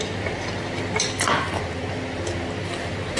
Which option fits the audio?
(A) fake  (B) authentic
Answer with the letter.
B